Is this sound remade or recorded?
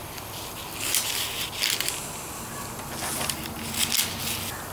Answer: recorded